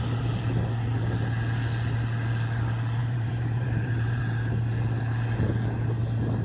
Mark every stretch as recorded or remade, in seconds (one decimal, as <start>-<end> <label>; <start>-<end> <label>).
0.0-3.0 recorded; 3.0-4.2 remade; 4.2-6.4 recorded